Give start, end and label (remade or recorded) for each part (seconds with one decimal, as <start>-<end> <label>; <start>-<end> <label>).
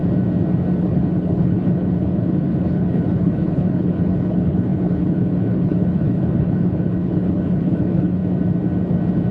0.0-0.8 recorded; 0.8-8.2 remade; 8.2-9.3 recorded